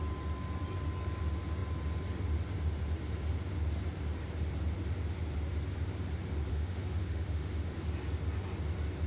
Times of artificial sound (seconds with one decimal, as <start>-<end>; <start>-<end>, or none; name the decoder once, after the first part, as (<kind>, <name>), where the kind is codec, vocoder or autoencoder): 6.5-7.8 (autoencoder, DAC-VAE)